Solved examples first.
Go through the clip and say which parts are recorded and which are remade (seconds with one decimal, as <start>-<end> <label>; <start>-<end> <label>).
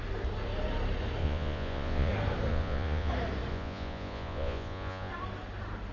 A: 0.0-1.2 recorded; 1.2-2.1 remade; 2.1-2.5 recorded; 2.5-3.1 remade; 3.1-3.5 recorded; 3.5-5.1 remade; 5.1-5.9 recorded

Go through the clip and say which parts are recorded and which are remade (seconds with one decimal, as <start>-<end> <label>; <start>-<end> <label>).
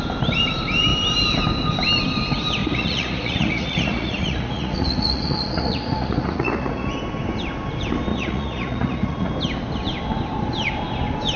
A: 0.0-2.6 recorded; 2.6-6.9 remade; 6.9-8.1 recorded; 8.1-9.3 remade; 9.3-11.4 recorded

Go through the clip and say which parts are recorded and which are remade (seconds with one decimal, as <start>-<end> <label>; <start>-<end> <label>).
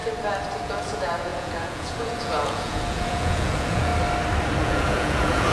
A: 0.0-0.6 recorded; 0.6-3.9 remade; 3.9-4.6 recorded; 4.6-5.5 remade